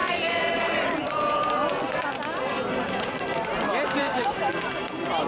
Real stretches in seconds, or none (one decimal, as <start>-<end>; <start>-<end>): 0.0-4.0; 4.5-5.3